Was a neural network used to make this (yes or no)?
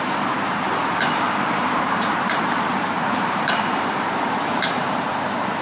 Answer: yes